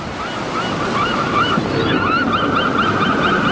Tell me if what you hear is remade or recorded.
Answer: recorded